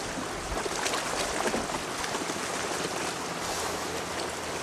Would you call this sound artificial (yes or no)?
no